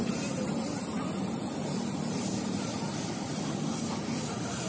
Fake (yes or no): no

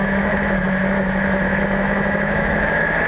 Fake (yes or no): yes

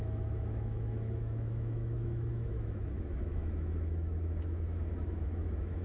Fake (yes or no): yes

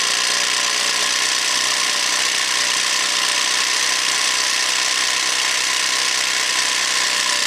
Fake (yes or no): no